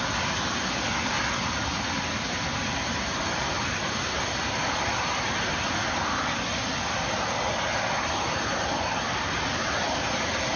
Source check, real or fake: real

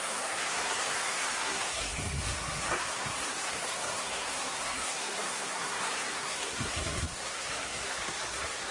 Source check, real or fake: fake